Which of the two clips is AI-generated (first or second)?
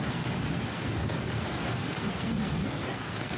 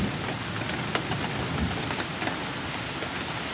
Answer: first